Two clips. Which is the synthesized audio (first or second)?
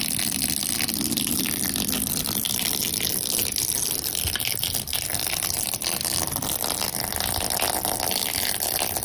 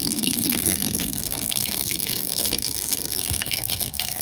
second